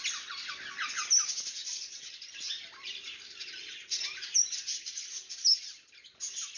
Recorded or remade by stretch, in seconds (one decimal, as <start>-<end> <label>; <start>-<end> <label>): 0.0-1.6 recorded; 1.6-5.6 remade; 5.6-6.6 recorded